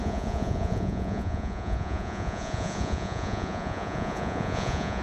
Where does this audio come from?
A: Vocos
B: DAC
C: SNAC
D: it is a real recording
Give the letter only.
A